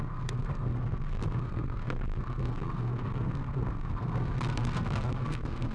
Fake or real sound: fake